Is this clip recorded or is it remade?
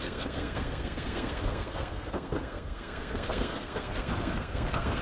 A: remade